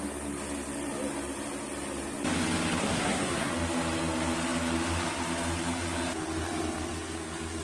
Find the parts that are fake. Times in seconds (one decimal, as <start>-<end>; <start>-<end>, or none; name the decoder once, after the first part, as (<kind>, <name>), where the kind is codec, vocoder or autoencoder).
2.8-3.5 (codec, SNAC)